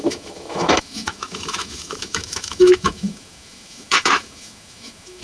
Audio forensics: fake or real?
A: fake